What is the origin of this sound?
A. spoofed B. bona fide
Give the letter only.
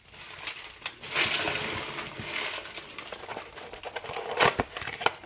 B